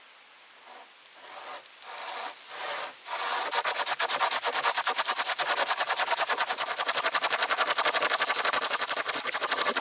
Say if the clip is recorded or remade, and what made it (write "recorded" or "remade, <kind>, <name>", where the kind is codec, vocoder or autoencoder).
recorded